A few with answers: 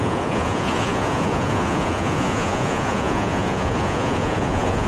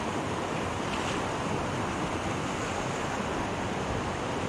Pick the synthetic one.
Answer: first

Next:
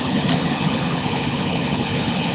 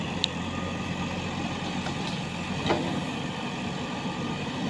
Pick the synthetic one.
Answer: first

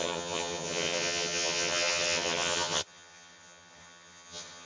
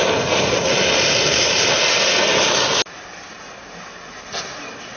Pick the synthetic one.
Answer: first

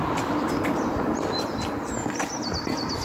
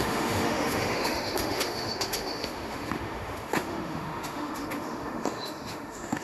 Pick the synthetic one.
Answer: second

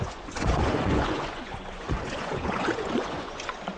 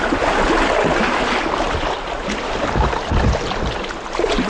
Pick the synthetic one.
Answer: first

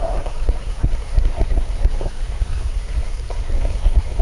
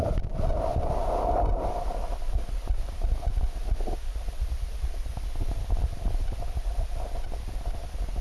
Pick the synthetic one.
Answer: first